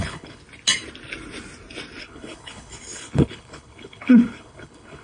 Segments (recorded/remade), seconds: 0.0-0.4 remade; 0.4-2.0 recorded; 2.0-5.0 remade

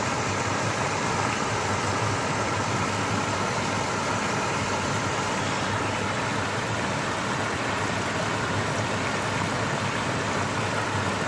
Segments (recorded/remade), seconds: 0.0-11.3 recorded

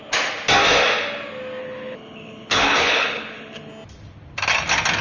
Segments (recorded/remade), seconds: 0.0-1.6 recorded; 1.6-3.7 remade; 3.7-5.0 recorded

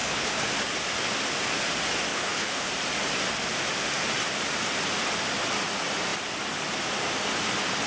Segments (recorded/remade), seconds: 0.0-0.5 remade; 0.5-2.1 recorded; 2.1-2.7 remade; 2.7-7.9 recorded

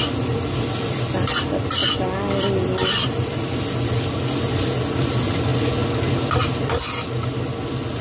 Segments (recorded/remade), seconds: 0.0-8.0 recorded

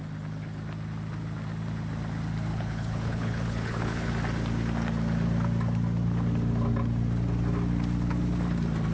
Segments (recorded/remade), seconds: 0.0-2.5 recorded; 2.5-4.1 remade; 4.1-8.9 recorded

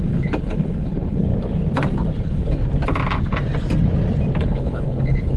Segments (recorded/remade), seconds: 0.0-1.3 remade; 1.3-2.2 recorded; 2.2-2.6 remade; 2.6-4.4 recorded; 4.4-5.4 remade